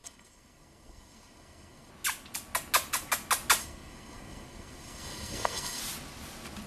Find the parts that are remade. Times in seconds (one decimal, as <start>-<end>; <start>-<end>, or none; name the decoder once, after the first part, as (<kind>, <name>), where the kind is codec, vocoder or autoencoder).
0.0-1.9 (codec, SNAC); 3.6-5.8